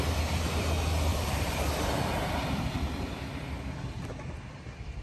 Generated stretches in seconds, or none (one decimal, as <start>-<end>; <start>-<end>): 1.1-1.9